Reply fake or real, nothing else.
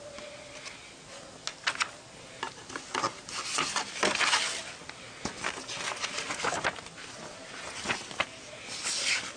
real